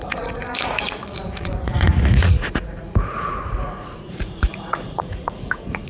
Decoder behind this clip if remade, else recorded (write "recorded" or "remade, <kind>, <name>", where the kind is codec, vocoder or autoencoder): remade, vocoder, Vocos